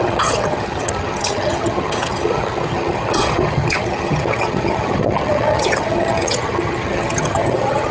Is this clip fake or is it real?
fake